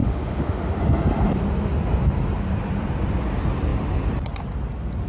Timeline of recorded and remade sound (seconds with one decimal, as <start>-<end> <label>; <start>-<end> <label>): 0.0-0.8 remade; 0.8-5.1 recorded